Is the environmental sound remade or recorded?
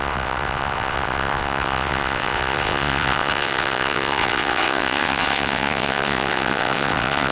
remade